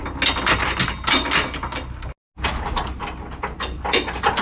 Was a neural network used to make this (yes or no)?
no